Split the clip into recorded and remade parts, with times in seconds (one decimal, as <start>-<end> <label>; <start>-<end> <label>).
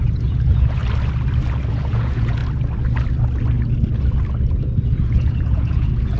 0.0-0.8 remade; 0.8-1.7 recorded; 1.7-2.4 remade; 2.4-4.5 recorded; 4.5-6.2 remade